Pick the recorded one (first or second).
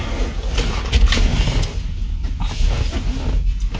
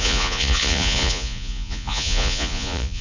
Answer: first